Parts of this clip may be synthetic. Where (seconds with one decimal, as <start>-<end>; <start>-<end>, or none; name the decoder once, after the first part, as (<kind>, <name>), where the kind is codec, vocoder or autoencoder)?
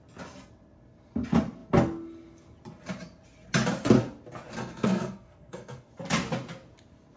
4.6-5.9 (codec, SNAC)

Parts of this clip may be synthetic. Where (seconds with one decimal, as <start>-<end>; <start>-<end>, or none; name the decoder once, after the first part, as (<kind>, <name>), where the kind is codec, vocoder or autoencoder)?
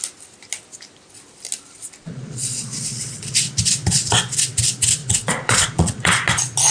2.0-3.3 (vocoder, Vocos); 5.0-6.1